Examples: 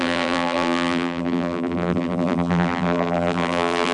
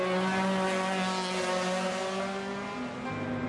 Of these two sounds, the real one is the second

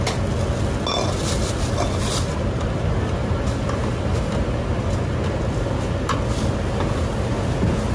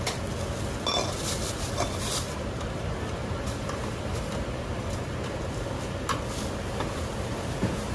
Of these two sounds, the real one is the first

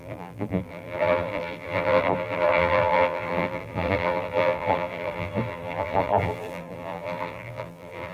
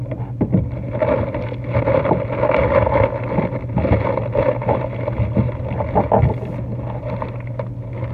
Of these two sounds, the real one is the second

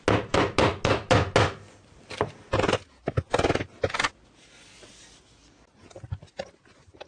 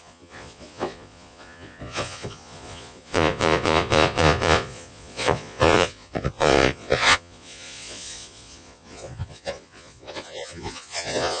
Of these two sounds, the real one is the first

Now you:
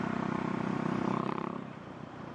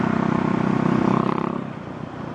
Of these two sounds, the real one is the second